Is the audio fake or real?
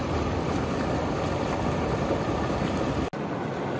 real